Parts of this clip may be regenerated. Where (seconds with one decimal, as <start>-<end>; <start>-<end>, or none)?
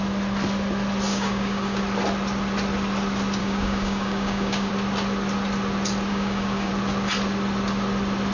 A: 1.1-1.8; 3.4-4.7; 6.1-6.7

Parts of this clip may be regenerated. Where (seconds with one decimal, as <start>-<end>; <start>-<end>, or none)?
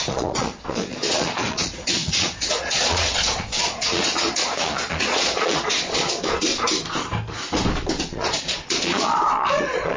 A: 0.0-6.5; 8.0-10.0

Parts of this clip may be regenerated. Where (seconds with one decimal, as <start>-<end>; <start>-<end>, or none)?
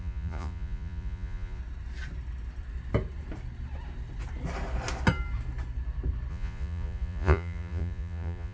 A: 0.0-1.6; 6.3-8.5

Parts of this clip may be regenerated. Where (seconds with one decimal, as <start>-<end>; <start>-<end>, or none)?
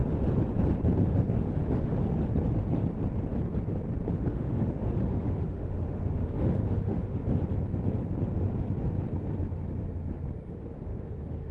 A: 1.0-1.9; 4.3-7.2; 10.5-11.5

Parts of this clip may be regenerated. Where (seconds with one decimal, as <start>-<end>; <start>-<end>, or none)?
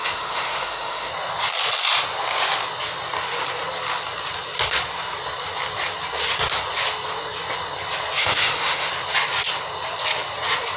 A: 0.0-1.1; 8.2-8.9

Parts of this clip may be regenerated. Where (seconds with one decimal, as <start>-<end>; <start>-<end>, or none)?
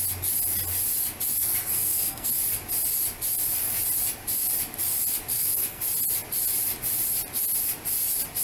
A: 1.4-2.3; 5.3-5.8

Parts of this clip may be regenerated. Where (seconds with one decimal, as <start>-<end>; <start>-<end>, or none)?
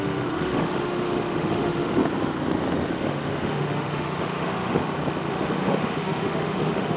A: 0.0-2.0; 2.9-4.8; 5.3-7.0